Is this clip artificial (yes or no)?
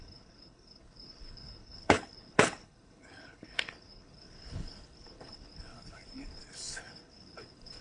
yes